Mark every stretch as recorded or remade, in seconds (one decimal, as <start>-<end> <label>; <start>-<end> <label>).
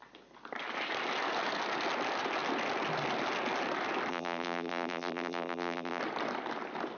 0.0-4.1 recorded; 4.1-6.0 remade; 6.0-7.0 recorded